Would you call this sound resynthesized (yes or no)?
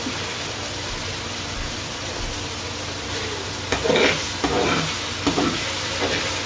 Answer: no